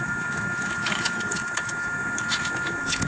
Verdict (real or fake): fake